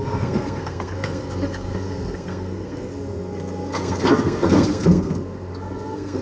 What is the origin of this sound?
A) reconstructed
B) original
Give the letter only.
A